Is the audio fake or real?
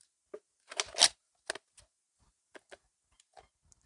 real